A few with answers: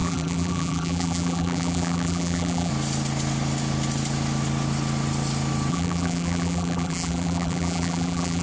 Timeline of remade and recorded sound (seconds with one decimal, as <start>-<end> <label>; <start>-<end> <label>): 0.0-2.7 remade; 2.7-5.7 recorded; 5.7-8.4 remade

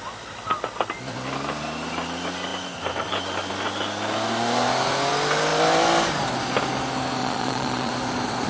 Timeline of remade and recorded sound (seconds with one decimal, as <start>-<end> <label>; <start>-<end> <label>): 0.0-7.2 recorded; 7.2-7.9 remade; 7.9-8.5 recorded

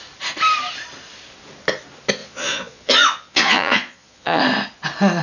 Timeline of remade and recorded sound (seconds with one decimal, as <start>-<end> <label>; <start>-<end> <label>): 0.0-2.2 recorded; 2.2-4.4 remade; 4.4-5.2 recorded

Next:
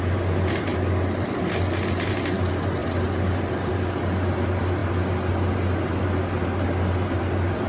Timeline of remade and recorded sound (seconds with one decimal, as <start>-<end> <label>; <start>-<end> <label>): 0.0-7.7 recorded

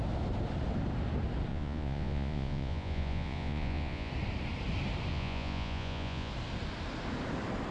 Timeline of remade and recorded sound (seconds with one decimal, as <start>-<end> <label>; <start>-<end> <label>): 0.0-1.5 recorded; 1.5-4.1 remade; 4.1-5.1 recorded; 5.1-6.3 remade; 6.3-7.7 recorded

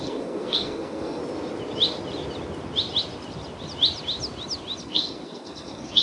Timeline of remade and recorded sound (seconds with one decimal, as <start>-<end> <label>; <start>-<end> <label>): 0.0-1.2 remade; 1.2-4.8 recorded; 4.8-6.0 remade

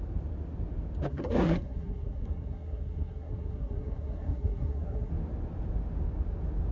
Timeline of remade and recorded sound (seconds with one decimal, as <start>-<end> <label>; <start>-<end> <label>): 0.0-1.1 recorded; 1.1-5.1 remade; 5.1-6.7 recorded